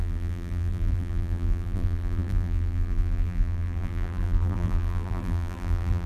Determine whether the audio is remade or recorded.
remade